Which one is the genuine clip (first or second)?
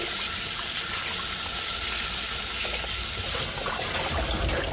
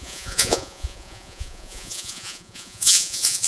first